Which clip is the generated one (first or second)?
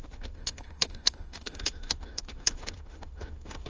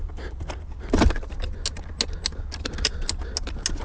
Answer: first